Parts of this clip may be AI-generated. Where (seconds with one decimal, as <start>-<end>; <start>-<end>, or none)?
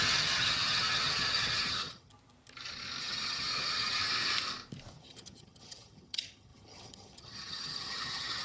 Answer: 0.0-2.1; 3.0-4.0; 4.9-8.4